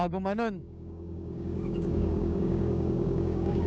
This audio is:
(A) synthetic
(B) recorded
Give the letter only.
A